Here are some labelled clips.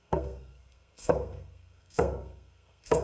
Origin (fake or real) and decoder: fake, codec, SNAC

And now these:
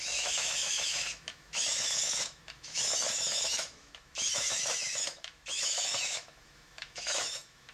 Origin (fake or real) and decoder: fake, autoencoder, DAC-VAE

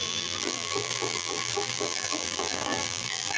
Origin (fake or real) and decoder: fake, vocoder, BigVGAN v2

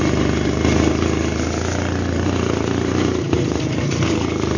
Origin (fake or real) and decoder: real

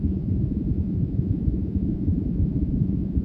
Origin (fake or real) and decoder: fake, vocoder, Vocos